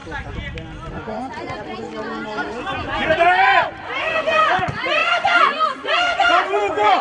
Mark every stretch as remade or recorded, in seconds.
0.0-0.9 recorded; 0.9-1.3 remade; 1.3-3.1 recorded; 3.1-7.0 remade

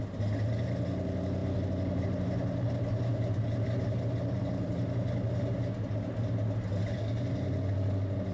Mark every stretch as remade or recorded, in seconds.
0.0-8.3 recorded